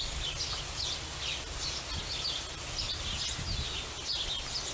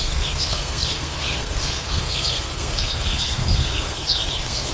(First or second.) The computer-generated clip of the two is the second